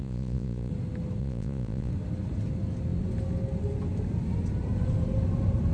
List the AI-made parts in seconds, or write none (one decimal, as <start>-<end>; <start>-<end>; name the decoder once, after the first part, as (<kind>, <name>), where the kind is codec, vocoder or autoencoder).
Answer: 0.0-0.7 (vocoder, Vocos); 1.2-1.9